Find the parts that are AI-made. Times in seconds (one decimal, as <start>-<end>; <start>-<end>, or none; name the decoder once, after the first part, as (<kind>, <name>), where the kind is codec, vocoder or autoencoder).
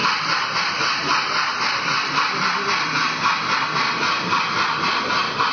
none